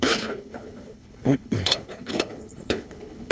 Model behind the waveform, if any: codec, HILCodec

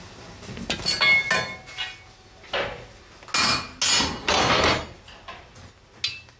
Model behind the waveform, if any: none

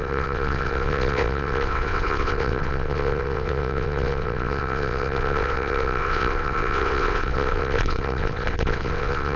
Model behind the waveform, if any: vocoder, WaveNeXt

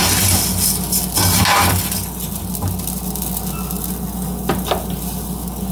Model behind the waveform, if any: none